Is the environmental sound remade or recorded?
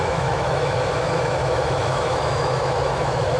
remade